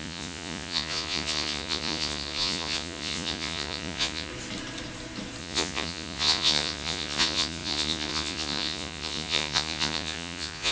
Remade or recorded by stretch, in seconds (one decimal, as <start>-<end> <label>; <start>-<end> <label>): 0.0-4.3 remade; 4.3-5.4 recorded; 5.4-10.7 remade